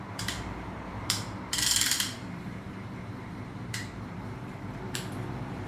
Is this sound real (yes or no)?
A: no